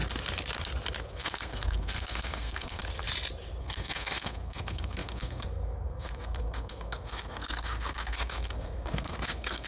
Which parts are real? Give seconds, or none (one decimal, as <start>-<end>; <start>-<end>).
0.0-1.2; 2.8-3.6